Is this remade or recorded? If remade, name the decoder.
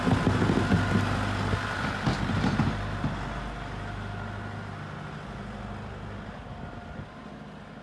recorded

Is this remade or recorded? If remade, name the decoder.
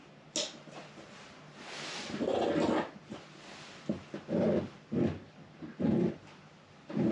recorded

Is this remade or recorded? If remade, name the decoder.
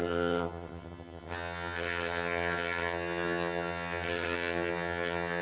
remade, vocoder, HiFi-GAN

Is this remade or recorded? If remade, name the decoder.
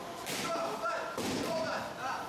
recorded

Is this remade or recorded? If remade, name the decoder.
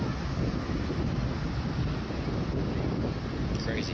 recorded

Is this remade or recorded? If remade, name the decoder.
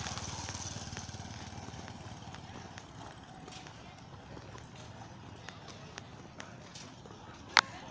recorded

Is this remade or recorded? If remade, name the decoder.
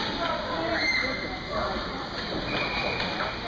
recorded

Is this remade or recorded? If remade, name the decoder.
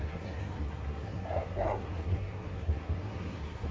remade, codec, SNAC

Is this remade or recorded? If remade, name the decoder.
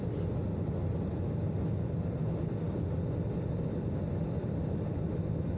recorded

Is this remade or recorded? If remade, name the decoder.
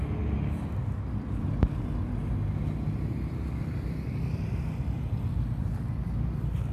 recorded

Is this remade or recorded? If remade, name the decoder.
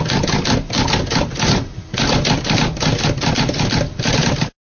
recorded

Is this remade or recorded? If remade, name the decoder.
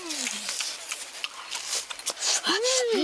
recorded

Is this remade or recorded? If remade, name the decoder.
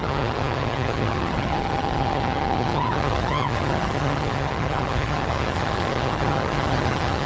remade, vocoder, HiFi-GAN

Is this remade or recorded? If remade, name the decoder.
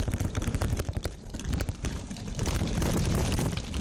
remade, vocoder, BigVGAN v2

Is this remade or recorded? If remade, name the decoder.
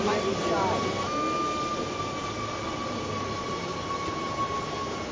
recorded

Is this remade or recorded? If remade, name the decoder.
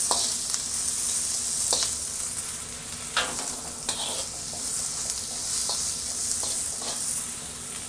recorded